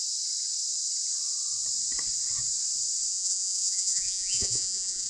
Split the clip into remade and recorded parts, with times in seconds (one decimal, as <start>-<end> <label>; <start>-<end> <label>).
0.0-3.1 recorded; 3.1-5.1 remade